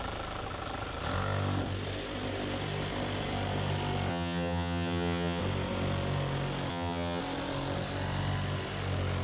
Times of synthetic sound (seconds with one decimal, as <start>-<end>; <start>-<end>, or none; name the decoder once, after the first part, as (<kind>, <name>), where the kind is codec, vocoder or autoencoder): 4.1-5.4 (vocoder, HiFi-GAN); 6.7-7.2